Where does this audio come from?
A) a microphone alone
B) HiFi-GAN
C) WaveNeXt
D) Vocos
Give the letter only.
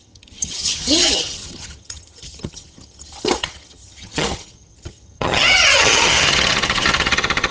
B